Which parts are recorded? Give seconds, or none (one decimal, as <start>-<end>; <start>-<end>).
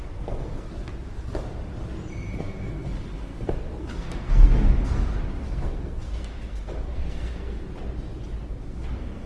0.7-2.4; 7.6-8.4